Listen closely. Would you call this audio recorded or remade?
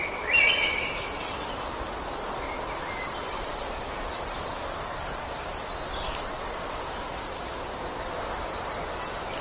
recorded